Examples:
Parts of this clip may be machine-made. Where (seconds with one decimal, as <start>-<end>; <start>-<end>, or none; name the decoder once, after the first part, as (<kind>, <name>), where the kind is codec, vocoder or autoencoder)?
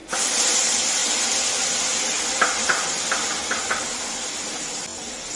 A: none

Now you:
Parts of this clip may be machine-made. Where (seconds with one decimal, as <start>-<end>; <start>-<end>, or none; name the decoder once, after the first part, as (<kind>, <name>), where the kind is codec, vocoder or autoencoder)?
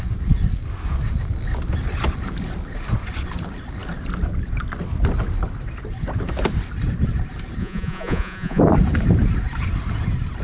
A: 7.6-8.6 (vocoder, Vocos)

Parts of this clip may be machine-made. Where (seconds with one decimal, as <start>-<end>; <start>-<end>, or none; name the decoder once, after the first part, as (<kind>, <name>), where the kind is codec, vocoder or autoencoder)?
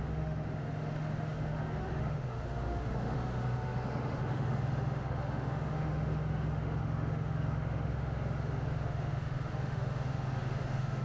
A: 0.0-11.0 (autoencoder, DAC-VAE)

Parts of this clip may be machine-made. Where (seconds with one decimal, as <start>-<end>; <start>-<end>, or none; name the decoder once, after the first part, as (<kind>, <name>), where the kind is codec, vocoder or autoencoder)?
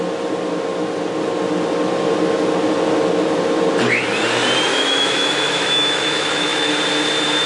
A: 4.7-6.7 (autoencoder, DAC-VAE)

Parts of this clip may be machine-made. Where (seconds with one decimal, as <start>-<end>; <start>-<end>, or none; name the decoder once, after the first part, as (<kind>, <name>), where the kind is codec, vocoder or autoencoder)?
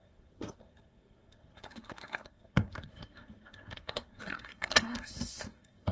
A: 0.0-5.9 (codec, SNAC)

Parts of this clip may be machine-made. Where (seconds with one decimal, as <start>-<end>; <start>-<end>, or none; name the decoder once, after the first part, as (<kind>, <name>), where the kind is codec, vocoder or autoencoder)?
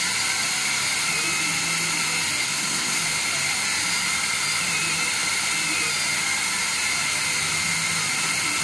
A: 2.4-3.0 (codec, SNAC)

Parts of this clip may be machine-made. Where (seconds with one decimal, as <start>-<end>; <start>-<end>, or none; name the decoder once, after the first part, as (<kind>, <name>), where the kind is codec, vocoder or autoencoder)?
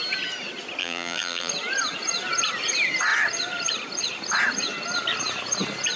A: 0.8-1.5 (vocoder, BigVGAN v2)